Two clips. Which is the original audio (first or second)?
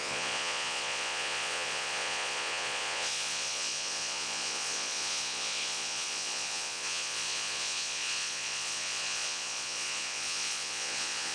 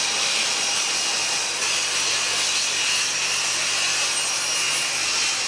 second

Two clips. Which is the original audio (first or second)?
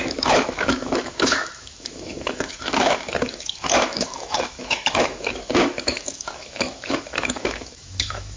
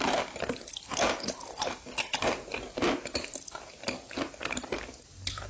second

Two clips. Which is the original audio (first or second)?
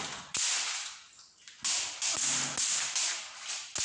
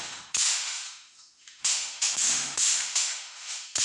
first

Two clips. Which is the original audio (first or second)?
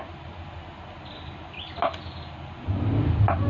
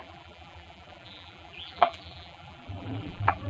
first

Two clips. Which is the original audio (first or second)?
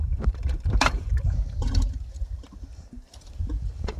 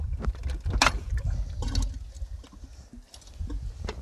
second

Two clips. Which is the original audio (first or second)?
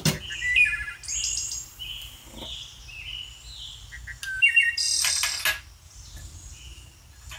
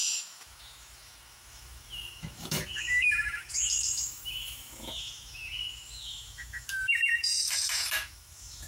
first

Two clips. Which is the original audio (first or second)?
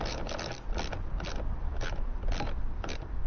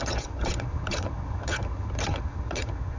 first